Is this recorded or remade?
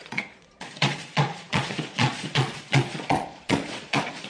remade